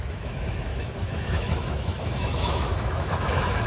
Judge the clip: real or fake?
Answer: fake